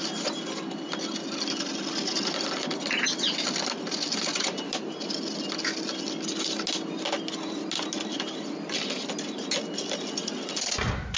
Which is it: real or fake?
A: real